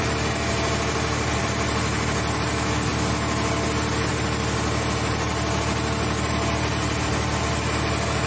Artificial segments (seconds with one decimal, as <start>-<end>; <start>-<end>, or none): none